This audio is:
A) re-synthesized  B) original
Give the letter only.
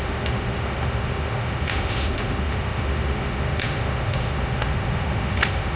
A